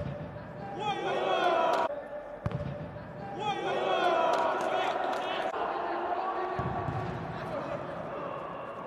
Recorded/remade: recorded